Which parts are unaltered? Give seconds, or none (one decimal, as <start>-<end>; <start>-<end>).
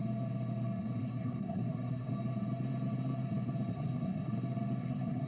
0.0-1.0; 2.1-3.7; 4.3-4.8